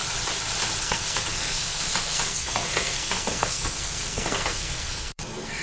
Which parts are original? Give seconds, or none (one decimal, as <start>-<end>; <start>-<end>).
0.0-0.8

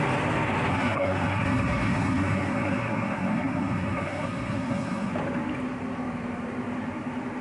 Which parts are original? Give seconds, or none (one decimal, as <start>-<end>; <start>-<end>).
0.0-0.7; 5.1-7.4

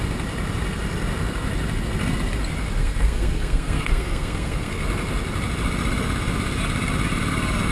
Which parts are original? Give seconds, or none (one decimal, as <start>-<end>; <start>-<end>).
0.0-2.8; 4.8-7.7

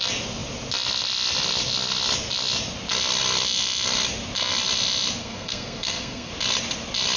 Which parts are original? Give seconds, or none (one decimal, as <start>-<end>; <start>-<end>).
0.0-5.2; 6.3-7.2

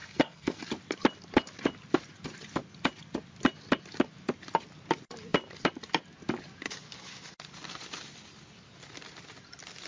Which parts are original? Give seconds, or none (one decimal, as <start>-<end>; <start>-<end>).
0.6-9.9

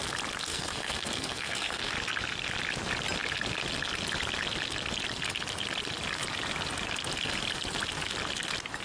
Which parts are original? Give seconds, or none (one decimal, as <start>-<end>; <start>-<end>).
0.0-0.5; 1.9-8.8